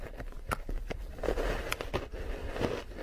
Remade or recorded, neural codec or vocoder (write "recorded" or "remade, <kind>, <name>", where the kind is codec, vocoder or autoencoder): recorded